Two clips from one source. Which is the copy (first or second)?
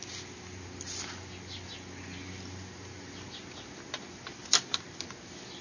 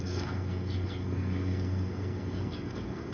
second